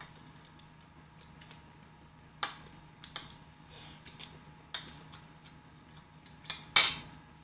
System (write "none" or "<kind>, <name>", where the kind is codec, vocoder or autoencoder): none